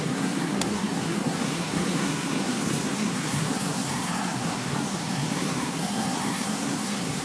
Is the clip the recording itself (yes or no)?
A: no